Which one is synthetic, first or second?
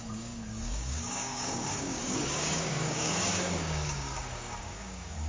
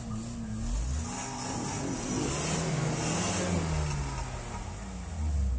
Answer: first